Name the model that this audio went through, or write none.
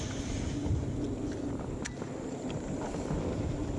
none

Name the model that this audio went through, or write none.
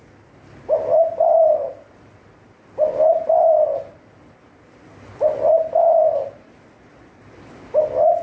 none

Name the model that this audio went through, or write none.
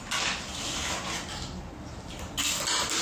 none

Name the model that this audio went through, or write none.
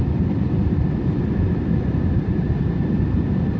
none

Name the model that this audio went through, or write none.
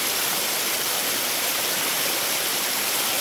none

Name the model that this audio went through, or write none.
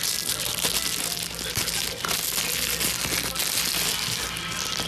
none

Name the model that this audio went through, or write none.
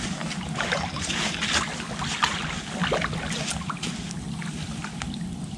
none